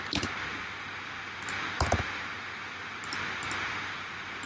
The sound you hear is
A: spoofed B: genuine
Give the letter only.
B